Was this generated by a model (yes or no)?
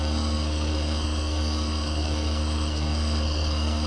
yes